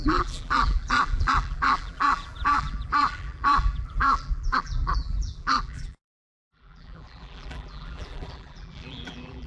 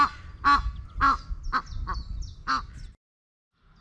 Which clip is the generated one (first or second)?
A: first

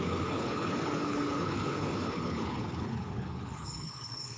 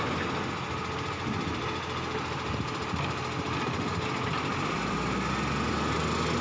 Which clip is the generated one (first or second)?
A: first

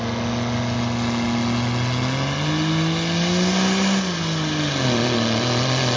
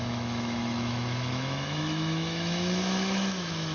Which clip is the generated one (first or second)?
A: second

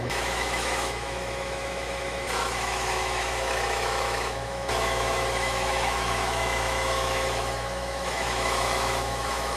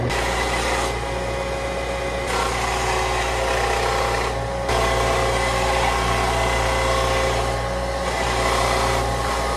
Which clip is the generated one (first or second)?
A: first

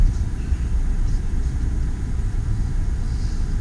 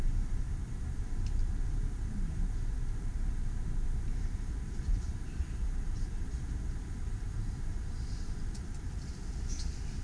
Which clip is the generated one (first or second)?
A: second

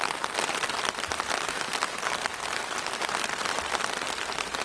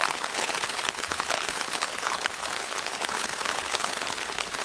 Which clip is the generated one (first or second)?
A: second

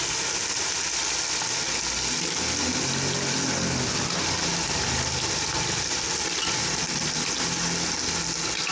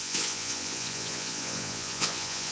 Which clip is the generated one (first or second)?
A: second